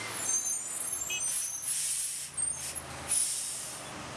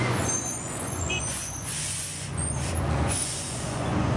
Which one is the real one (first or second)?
first